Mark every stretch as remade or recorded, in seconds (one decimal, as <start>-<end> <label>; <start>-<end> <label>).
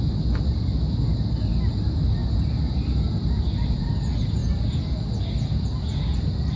0.0-6.6 recorded